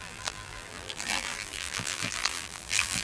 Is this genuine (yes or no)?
no